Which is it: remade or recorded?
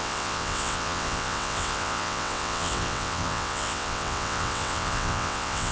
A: remade